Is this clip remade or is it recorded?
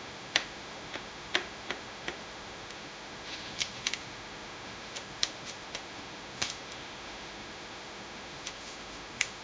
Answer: remade